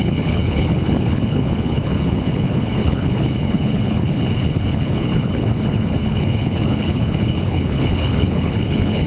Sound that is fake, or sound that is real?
fake